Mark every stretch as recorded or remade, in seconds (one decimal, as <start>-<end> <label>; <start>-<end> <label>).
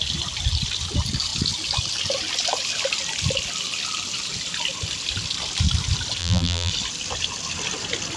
0.0-6.2 recorded; 6.2-6.7 remade; 6.7-8.2 recorded